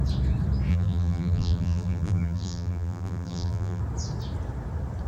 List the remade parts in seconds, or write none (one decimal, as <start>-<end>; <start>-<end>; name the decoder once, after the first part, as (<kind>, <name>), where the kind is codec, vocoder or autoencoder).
0.7-3.8 (vocoder, BigVGAN v2)